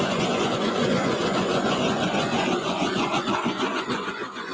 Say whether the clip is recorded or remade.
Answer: remade